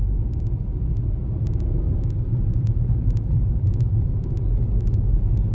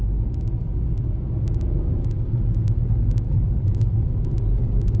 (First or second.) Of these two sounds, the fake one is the first